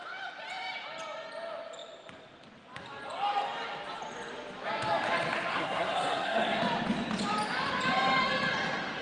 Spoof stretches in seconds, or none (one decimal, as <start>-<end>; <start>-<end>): 5.5-6.6